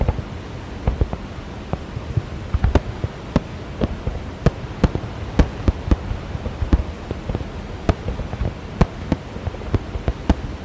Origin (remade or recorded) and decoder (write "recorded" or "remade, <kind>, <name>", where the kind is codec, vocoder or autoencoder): recorded